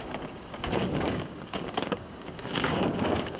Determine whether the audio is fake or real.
fake